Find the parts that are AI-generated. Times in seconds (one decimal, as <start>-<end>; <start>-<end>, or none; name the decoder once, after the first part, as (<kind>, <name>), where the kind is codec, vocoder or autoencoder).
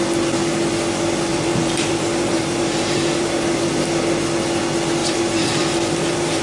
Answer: 1.3-3.3 (vocoder, BigVGAN v2); 5.0-6.4